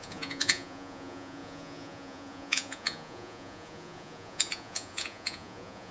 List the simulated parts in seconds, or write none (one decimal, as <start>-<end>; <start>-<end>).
0.0-5.9